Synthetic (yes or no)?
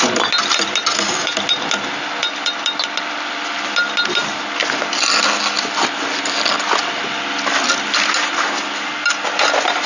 no